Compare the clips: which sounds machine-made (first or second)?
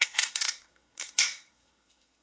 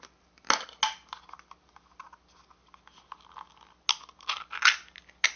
first